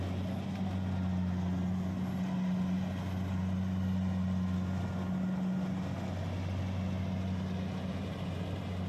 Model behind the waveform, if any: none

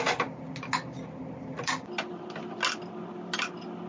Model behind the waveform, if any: none